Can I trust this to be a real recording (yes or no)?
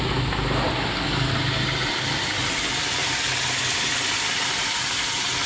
yes